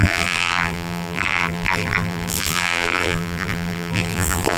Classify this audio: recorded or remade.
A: remade